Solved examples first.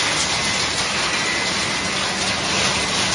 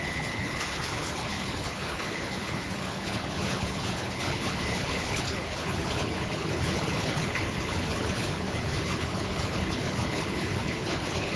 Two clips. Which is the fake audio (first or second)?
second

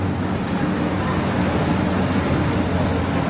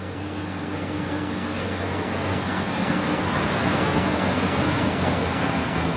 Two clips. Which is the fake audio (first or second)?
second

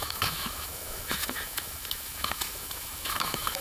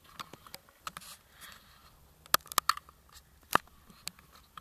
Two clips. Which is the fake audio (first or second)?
first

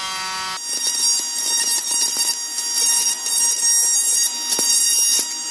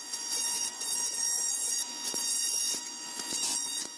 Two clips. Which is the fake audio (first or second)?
second